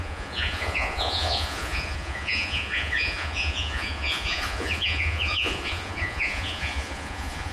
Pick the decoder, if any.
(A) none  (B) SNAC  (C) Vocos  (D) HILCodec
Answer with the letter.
C